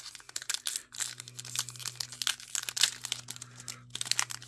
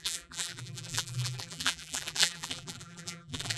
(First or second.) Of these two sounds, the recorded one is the first